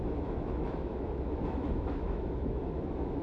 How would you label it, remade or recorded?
remade